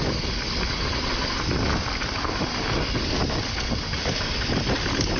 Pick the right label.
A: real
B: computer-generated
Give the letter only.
A